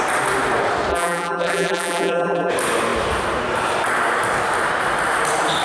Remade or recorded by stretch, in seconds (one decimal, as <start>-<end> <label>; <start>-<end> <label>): 0.0-0.9 recorded; 0.9-2.5 remade; 2.5-5.6 recorded